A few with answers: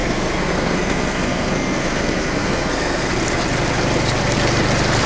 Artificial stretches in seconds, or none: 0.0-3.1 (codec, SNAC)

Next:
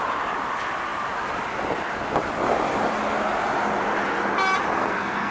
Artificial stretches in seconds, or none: 4.8-5.3 (codec, SNAC)

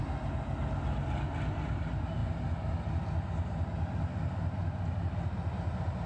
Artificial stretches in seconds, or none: none

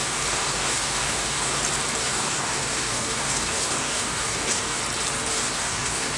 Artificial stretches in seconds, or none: 0.0-1.6 (codec, DAC); 2.0-4.8; 5.3-6.2

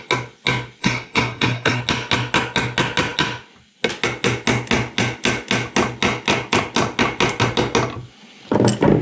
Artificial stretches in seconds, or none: 0.8-1.8 (codec, SNAC)

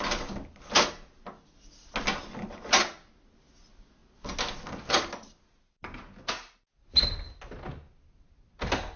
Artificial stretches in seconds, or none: none